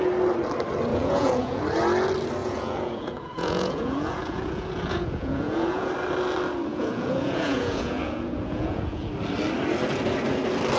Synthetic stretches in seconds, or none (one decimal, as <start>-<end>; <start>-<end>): 0.9-1.6; 2.4-5.9; 6.7-9.1